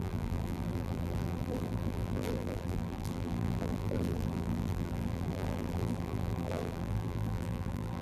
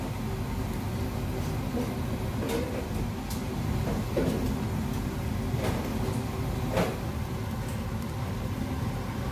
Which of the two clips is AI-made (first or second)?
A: first